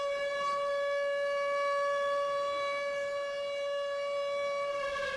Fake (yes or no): no